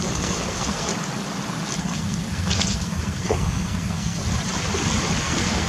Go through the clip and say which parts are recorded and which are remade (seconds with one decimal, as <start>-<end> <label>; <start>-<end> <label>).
0.0-0.9 remade; 0.9-1.8 recorded; 1.8-4.2 remade; 4.2-5.2 recorded; 5.2-5.7 remade